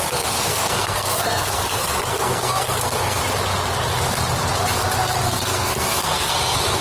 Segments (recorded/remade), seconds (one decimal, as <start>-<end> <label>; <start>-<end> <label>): 0.0-3.2 remade; 3.2-5.2 recorded; 5.2-6.8 remade